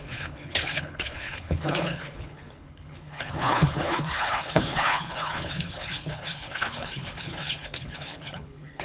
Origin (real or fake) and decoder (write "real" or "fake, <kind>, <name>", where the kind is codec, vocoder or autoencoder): fake, codec, HILCodec